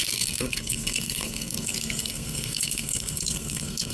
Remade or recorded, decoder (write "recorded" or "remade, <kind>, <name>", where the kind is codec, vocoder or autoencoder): remade, codec, SNAC